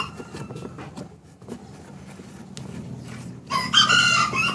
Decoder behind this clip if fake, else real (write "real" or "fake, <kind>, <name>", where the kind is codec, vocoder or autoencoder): real